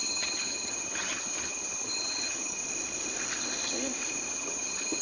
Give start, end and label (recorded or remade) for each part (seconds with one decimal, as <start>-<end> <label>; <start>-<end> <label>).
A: 0.0-2.6 remade; 2.6-4.3 recorded; 4.3-5.0 remade